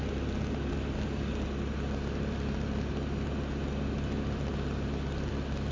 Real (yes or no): yes